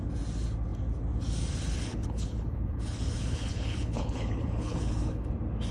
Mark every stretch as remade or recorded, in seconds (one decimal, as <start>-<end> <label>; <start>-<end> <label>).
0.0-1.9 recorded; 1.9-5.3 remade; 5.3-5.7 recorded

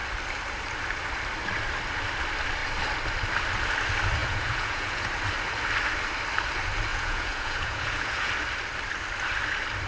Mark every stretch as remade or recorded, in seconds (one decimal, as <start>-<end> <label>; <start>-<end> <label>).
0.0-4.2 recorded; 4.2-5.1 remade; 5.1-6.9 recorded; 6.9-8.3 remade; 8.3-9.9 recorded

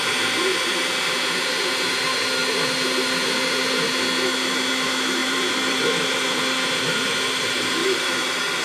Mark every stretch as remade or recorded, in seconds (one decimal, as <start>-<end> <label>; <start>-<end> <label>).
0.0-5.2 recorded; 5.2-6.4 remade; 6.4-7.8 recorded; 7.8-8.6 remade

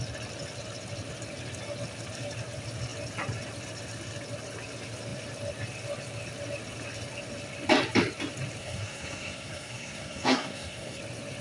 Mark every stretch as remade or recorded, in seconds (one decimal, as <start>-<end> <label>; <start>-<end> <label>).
0.0-8.6 recorded; 8.6-11.0 remade; 11.0-11.4 recorded